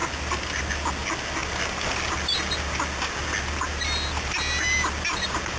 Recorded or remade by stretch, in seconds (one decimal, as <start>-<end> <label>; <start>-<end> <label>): 0.0-5.6 recorded